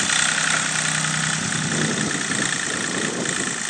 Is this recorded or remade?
recorded